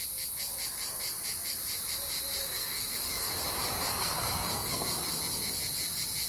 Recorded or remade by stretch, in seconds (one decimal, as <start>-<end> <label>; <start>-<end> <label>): 0.0-2.4 recorded; 2.4-3.3 remade; 3.3-3.9 recorded; 3.9-4.8 remade; 4.8-6.3 recorded